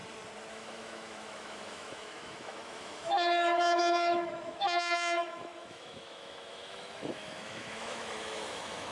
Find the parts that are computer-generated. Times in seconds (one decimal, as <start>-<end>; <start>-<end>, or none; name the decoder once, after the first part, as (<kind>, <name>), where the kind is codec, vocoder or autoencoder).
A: 0.5-8.9 (autoencoder, DAC-VAE)